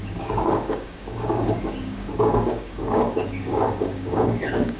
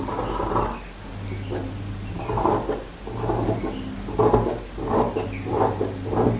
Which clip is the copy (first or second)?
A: first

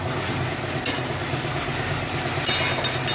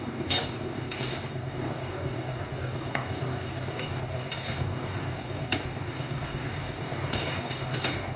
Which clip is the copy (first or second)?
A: second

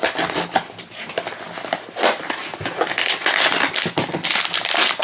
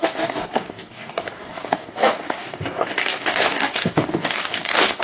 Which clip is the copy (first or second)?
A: second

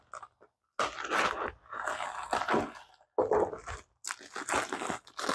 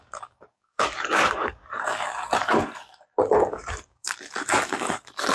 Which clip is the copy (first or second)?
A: second